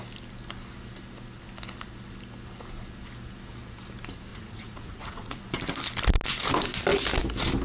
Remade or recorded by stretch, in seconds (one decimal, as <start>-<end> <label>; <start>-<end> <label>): 0.0-4.3 recorded; 4.3-5.4 remade; 5.4-7.6 recorded